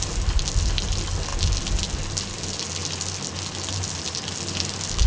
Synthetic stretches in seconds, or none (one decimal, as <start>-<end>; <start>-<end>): none